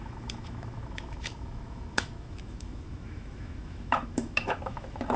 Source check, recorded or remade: remade